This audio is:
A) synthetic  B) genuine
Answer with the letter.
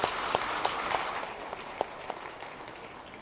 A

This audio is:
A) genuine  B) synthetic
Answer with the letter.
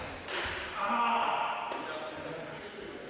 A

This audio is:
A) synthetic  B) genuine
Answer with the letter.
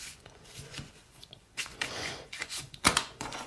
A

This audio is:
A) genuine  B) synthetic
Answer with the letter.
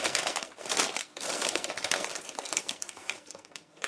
B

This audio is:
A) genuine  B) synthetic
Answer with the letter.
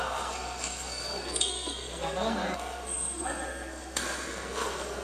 B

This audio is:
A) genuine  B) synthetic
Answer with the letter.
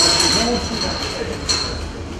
A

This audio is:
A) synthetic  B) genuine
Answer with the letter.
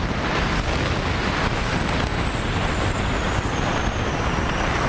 B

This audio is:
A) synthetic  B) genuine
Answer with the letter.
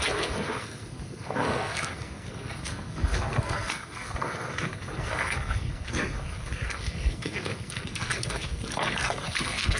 A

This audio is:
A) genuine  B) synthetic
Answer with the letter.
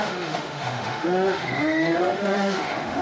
B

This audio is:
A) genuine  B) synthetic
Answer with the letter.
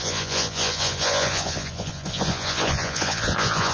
B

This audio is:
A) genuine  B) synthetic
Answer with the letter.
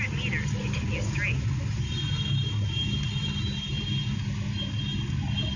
A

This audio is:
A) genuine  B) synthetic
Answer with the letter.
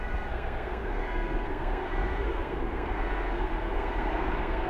B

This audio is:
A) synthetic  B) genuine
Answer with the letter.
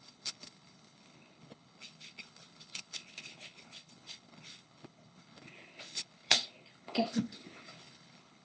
A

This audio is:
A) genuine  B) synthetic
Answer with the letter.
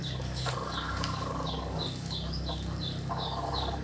B